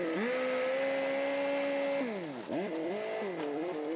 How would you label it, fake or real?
real